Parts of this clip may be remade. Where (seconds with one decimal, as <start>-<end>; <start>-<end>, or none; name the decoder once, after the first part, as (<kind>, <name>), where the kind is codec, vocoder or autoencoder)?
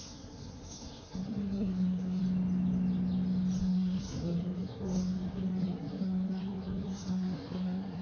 0.0-2.2 (codec, SNAC); 3.6-8.0